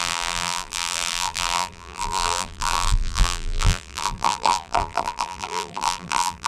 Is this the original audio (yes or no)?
no